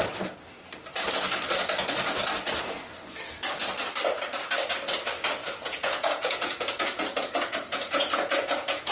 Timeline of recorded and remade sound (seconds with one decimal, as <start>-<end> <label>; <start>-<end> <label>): 0.0-5.4 recorded; 5.4-8.9 remade